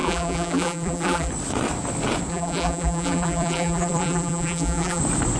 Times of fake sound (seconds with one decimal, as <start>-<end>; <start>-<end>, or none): 0.0-1.3; 2.3-5.0